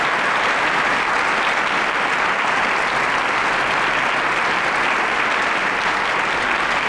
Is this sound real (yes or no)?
yes